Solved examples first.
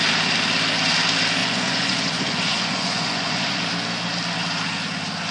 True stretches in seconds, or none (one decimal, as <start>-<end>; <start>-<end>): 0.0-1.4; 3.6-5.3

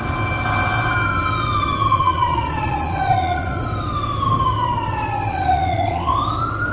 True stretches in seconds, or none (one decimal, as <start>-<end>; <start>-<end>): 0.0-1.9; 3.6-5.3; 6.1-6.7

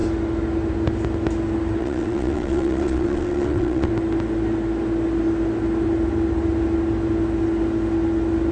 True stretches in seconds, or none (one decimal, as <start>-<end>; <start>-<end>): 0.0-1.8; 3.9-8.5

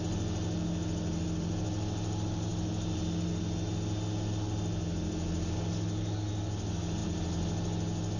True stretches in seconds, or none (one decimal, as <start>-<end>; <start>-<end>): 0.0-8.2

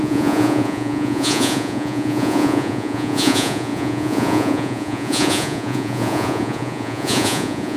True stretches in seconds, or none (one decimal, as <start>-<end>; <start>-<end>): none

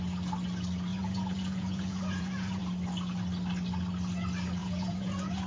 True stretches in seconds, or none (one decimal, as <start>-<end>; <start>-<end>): 0.0-0.9; 2.6-4.6